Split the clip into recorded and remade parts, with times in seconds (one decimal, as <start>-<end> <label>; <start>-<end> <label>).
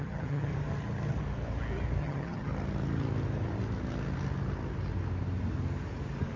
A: 0.0-0.5 remade; 0.5-2.0 recorded; 2.0-2.5 remade; 2.5-6.4 recorded